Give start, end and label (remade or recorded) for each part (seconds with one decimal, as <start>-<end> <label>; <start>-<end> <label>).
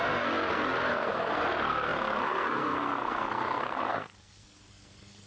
0.0-5.3 remade